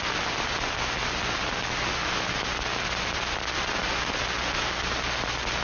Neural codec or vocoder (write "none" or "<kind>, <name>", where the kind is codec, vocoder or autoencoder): none